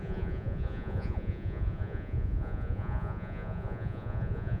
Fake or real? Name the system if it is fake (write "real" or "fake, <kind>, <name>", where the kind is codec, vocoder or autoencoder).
fake, vocoder, Vocos